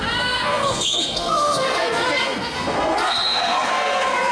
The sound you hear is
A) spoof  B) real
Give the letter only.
A